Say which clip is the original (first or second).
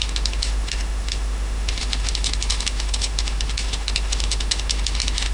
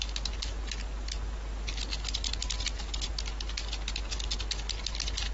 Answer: second